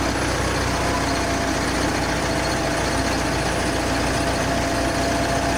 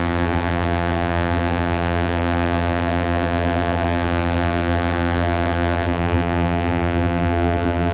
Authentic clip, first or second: first